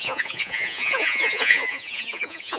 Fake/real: fake